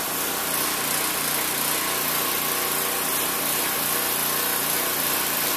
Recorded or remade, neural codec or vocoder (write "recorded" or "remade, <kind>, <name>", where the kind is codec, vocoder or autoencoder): recorded